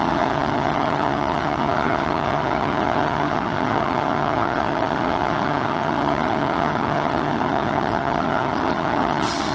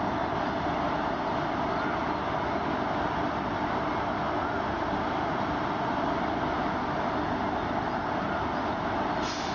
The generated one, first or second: first